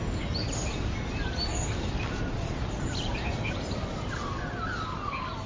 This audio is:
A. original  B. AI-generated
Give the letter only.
A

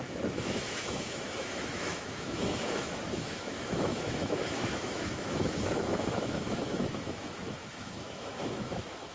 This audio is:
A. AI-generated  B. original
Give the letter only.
A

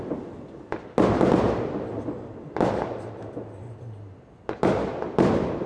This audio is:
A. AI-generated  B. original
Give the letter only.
B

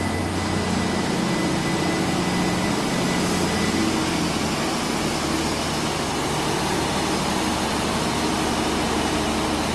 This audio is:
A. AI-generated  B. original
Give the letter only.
B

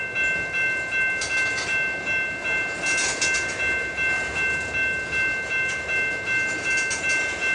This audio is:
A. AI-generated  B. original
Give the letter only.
B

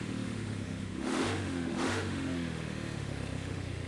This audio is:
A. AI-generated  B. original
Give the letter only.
A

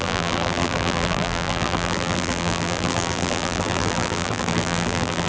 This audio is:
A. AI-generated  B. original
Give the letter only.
A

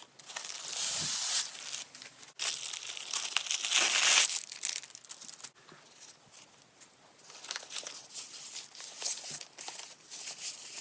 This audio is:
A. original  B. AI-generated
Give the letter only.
A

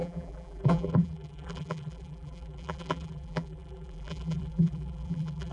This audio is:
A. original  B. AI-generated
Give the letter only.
B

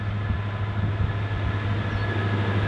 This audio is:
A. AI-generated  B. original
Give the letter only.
B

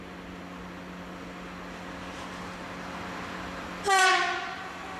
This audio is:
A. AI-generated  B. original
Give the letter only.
B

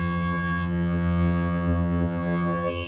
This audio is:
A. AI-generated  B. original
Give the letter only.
A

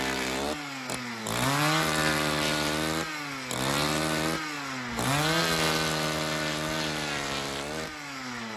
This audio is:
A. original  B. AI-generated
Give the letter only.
A